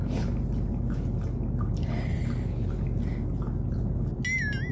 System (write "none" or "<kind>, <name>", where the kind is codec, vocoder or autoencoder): none